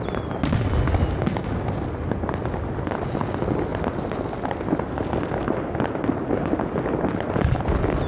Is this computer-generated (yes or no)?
no